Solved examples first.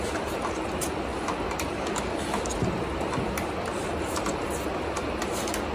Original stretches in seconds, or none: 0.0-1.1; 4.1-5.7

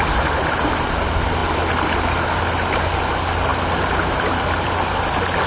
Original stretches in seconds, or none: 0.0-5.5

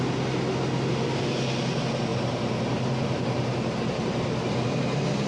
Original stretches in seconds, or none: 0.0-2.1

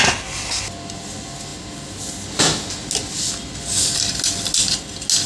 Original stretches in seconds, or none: 0.0-5.3

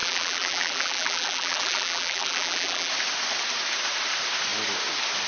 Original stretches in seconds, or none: 2.9-5.3

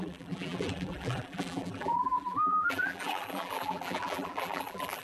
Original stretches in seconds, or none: none